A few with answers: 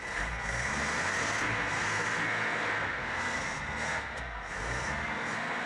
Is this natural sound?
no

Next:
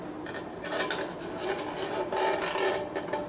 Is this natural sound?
yes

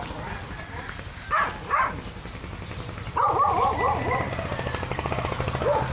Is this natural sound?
yes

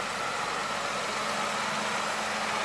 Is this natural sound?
yes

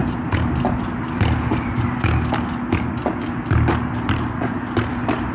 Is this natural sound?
yes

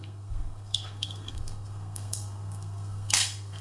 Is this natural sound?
no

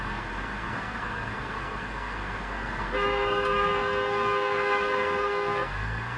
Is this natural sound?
no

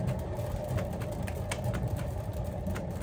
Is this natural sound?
yes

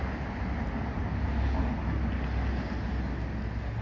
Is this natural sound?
yes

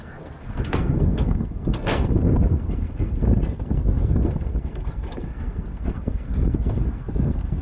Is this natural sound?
no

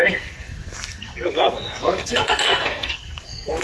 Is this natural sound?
no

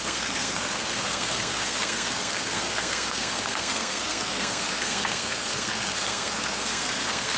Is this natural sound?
no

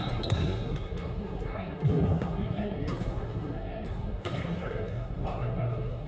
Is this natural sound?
no